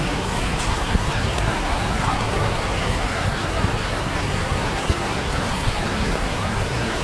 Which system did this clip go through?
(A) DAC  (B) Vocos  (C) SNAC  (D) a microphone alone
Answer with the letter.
C